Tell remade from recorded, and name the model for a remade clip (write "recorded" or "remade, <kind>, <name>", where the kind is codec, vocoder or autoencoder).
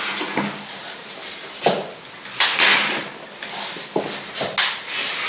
recorded